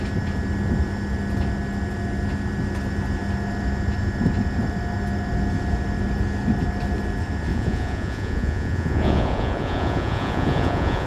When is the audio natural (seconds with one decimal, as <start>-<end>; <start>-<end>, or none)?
0.0-7.5